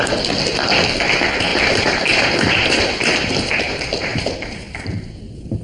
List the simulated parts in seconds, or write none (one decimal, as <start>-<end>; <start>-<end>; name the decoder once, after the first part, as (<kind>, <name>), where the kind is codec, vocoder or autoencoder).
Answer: 1.5-4.9 (vocoder, BigVGAN v2)

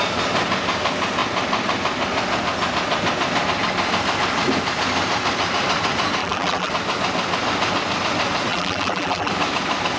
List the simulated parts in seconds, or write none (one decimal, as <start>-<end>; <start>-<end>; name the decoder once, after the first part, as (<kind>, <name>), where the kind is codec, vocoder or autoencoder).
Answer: 6.2-6.7 (vocoder, BigVGAN v2); 8.5-9.3

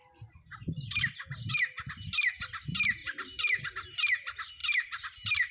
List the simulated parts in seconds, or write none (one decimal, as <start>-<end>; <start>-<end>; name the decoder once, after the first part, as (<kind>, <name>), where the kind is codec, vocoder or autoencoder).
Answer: 0.0-1.5 (vocoder, BigVGAN v2); 3.0-3.6; 4.6-5.5

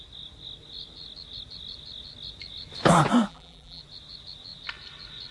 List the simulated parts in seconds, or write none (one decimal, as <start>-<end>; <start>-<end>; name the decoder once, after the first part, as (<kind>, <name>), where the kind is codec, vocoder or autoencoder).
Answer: 3.3-3.8 (vocoder, BigVGAN v2)

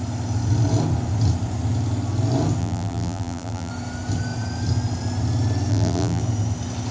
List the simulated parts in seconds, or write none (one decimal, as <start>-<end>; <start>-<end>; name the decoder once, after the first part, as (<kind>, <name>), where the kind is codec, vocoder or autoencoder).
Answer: 2.6-3.7 (vocoder, BigVGAN v2); 5.7-6.2